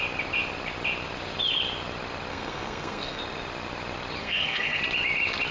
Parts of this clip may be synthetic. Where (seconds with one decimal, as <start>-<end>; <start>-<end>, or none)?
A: 2.3-3.2; 4.2-4.8